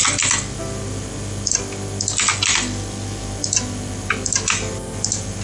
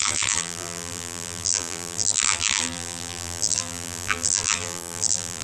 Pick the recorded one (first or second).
first